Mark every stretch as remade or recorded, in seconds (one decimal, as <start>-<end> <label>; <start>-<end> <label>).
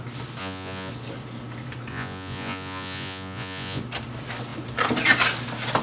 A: 0.0-0.4 recorded; 0.4-0.9 remade; 0.9-1.9 recorded; 1.9-3.8 remade; 3.8-5.8 recorded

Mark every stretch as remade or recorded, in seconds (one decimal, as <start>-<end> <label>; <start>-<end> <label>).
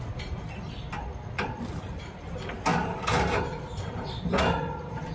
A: 0.0-1.1 recorded; 1.1-2.3 remade; 2.3-2.7 recorded; 2.7-3.4 remade; 3.4-5.1 recorded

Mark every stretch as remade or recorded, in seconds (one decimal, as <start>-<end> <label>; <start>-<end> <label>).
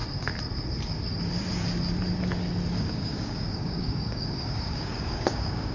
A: 0.0-2.8 recorded; 2.8-5.7 remade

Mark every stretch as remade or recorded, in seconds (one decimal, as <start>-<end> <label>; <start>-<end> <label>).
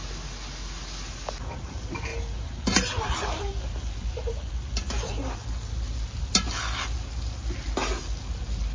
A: 0.0-8.7 recorded